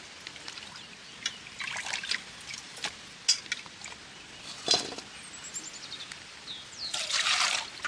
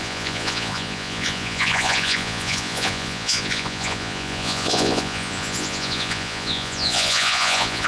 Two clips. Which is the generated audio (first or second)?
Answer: second